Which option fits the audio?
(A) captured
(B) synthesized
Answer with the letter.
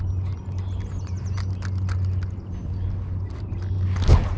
A